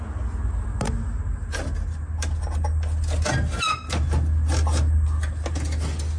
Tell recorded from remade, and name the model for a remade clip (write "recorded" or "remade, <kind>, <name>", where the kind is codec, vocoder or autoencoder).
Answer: recorded